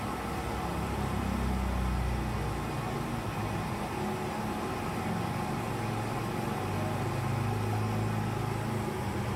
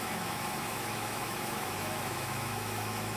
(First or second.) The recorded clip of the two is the first